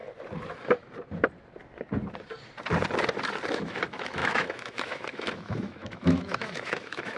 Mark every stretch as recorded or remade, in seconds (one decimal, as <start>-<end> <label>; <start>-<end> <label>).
0.0-3.5 recorded; 3.5-7.2 remade